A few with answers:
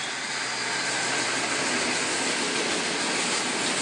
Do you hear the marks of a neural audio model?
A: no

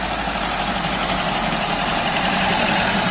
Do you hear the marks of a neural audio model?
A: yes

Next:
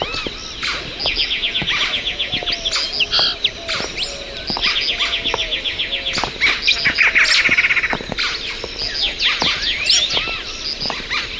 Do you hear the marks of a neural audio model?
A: no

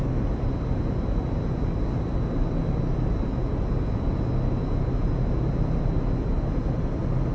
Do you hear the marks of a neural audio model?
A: no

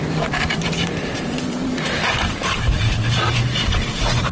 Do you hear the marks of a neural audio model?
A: yes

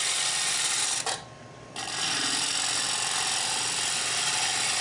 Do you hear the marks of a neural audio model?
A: no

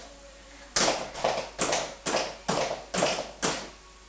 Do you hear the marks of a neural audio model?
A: no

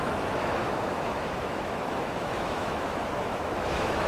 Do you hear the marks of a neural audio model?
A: yes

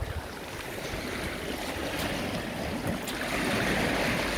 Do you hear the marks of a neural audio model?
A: no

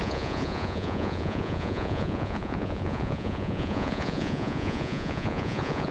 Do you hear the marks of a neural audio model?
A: yes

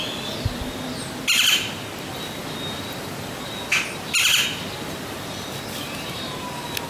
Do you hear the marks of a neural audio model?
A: no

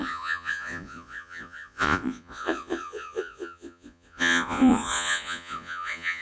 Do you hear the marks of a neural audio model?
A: yes